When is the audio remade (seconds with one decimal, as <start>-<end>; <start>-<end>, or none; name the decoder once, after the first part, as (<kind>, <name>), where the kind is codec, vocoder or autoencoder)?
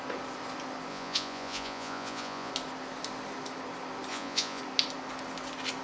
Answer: 0.9-2.5 (vocoder, Vocos); 4.1-4.6